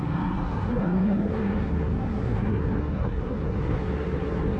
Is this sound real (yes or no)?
no